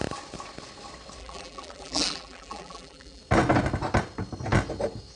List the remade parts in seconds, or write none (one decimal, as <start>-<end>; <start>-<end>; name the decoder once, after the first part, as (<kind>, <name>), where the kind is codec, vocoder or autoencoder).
1.2-3.2 (vocoder, BigVGAN v2)